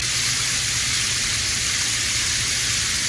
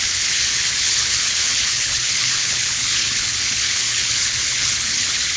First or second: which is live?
first